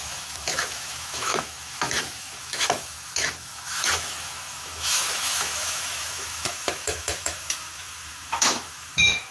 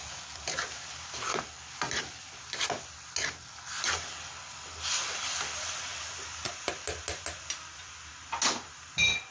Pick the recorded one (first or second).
second